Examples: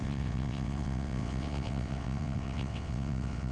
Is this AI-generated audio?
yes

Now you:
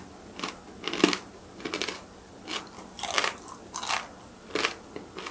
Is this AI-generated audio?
no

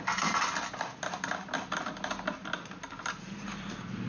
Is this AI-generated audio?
no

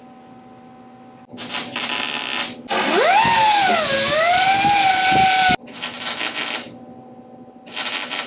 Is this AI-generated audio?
no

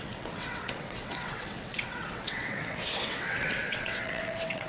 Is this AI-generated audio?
yes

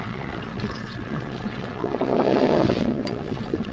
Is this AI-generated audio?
yes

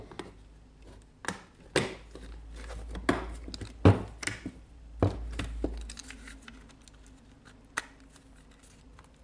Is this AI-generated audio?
no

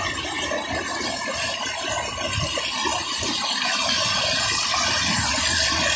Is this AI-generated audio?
no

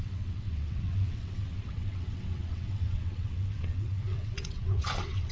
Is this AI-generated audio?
yes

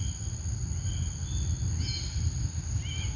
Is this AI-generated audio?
no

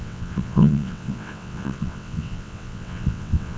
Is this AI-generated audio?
yes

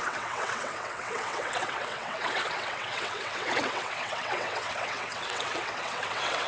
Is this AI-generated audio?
yes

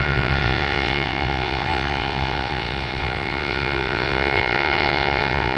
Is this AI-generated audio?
yes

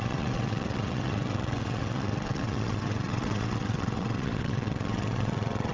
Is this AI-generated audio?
yes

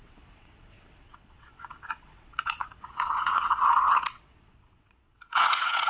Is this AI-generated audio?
yes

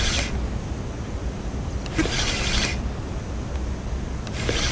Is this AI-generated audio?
no